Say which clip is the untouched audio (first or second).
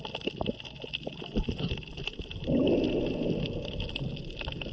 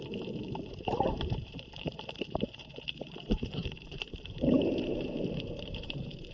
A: first